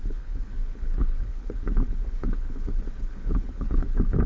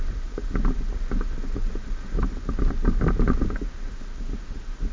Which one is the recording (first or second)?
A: second